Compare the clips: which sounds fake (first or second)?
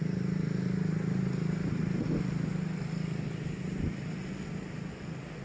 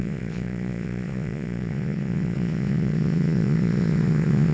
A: second